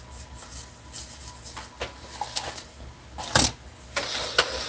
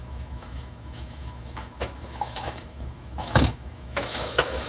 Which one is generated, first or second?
second